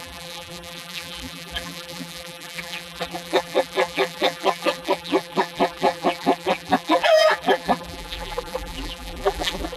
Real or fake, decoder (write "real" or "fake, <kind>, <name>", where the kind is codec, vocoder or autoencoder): fake, vocoder, BigVGAN v2